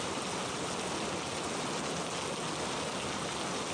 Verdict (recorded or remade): recorded